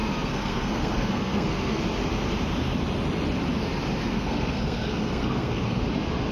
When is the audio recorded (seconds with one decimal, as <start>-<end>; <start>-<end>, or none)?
1.8-4.0; 5.8-6.3